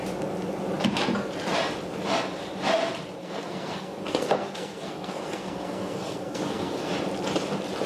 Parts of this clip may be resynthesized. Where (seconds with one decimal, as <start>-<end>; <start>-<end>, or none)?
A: 3.2-6.9